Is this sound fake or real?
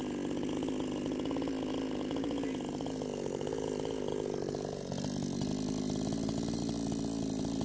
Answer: real